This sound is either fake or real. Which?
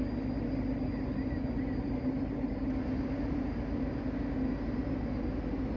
real